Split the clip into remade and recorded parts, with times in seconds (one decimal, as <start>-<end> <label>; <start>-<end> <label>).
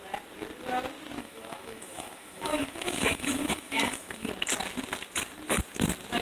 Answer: 0.0-1.2 recorded; 1.2-4.3 remade; 4.3-6.2 recorded